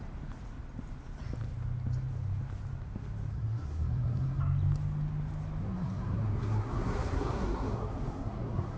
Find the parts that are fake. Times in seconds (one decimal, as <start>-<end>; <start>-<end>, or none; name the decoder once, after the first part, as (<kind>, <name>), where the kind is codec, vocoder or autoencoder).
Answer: 3.3-4.4 (codec, SNAC); 5.6-8.8